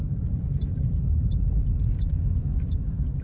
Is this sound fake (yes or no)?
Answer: yes